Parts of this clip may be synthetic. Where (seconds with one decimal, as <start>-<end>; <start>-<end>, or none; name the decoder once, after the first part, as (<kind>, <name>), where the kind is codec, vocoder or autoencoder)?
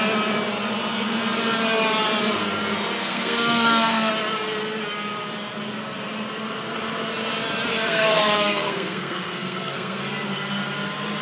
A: 3.0-4.1 (codec, SNAC); 7.7-10.0